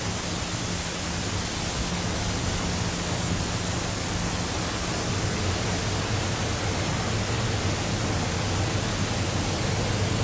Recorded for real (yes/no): yes